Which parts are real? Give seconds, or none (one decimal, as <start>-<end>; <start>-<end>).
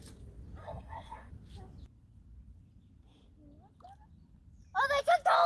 0.0-0.6; 1.3-5.5